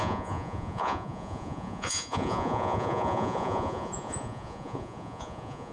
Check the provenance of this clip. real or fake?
fake